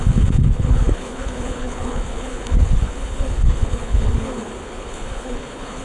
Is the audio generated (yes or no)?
yes